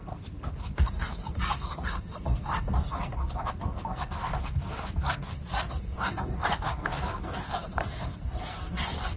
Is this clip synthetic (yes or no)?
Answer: yes